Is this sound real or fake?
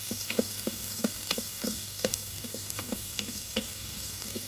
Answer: fake